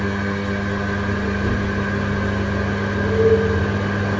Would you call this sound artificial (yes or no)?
no